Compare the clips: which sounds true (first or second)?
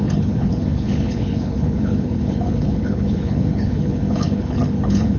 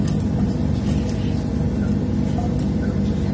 second